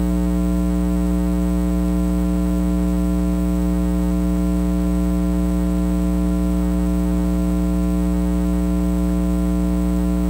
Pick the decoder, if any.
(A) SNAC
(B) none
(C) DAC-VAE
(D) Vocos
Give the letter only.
B